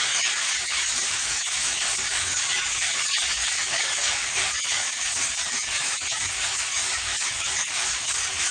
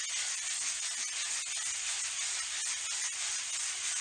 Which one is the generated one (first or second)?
first